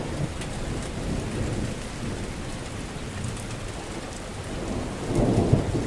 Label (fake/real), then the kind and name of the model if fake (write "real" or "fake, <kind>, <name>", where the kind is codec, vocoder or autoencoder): real